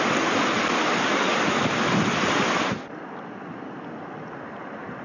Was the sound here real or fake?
real